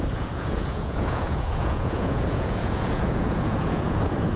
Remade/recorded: remade